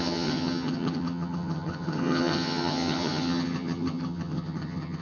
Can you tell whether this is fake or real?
fake